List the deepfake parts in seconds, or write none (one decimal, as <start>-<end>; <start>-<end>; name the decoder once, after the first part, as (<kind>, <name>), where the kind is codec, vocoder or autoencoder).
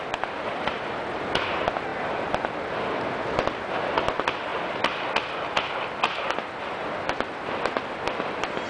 1.9-2.6 (vocoder, BigVGAN v2); 4.5-5.7